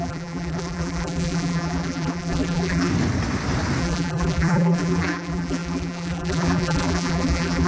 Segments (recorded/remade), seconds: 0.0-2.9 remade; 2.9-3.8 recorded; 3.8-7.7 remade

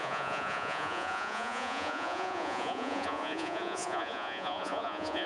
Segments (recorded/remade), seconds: 0.0-5.3 remade

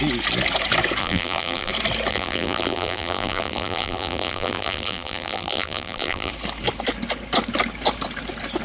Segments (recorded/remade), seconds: 0.0-1.0 recorded; 1.0-1.7 remade; 1.7-2.1 recorded; 2.1-6.3 remade; 6.3-8.6 recorded

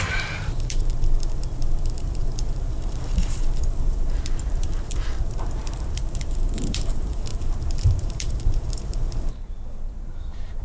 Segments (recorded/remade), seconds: 0.0-10.6 remade

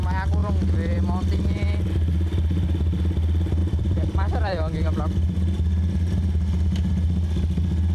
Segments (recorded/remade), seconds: 0.0-0.4 recorded; 0.4-1.9 remade; 1.9-3.6 recorded; 3.6-5.0 remade; 5.0-7.9 recorded